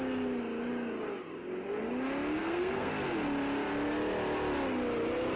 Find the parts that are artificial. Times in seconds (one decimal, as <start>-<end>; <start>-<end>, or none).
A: 2.4-2.9